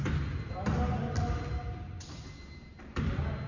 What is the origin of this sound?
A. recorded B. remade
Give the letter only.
A